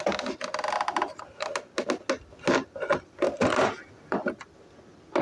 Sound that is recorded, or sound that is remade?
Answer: recorded